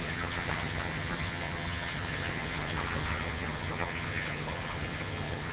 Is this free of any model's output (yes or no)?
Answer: no